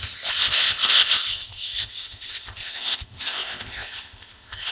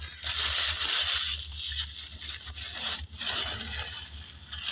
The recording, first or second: second